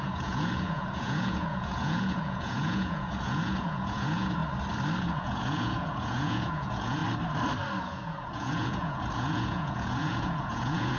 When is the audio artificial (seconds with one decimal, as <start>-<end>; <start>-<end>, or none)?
0.0-4.4; 5.0-7.0; 7.8-11.0